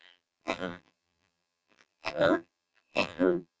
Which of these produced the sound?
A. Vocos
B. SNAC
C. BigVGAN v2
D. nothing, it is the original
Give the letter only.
C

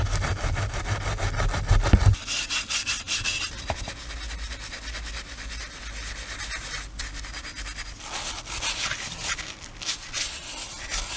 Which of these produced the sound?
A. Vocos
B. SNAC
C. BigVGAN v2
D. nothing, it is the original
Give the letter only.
D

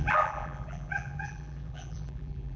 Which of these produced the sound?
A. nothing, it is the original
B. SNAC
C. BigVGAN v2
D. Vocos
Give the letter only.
C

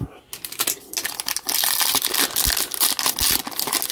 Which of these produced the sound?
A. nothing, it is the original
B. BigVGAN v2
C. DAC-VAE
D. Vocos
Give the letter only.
A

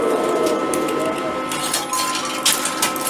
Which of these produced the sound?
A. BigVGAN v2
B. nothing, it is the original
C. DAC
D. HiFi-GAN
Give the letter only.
B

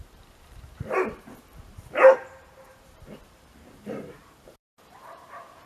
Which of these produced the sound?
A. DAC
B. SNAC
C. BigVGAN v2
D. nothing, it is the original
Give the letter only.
C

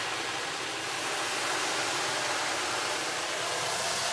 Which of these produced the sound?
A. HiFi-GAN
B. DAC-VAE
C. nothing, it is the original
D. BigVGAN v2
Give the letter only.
C